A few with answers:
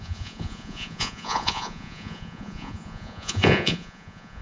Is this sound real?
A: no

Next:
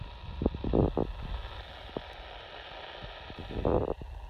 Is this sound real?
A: yes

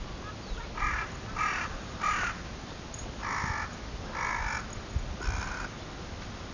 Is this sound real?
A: yes